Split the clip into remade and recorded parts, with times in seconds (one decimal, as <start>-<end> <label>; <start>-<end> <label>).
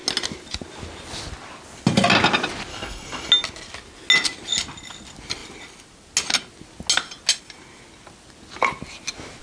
0.0-2.7 recorded; 2.7-3.3 remade; 3.3-9.4 recorded